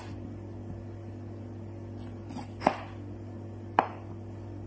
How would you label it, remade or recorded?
recorded